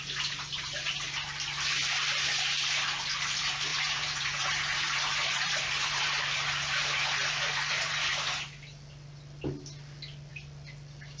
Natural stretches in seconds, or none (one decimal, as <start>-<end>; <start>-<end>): 0.0-3.7; 6.2-7.2; 8.2-11.2